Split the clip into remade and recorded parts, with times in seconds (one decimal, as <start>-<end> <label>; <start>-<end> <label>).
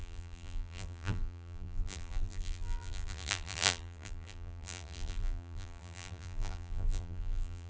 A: 0.0-7.7 remade